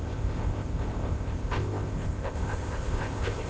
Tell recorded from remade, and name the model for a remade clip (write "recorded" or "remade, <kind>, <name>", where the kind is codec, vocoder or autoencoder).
remade, codec, ZipCodec